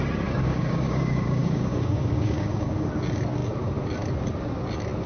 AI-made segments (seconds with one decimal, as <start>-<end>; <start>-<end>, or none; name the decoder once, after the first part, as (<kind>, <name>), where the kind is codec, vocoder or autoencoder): 0.4-2.9 (codec, DAC)